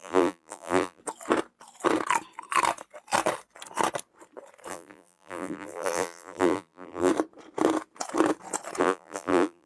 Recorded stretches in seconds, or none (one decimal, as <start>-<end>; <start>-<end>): 1.0-4.7; 7.1-8.8